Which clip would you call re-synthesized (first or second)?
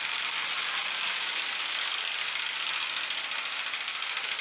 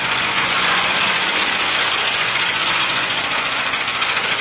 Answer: second